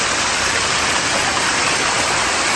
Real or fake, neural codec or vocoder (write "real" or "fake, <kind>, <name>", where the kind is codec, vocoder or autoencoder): real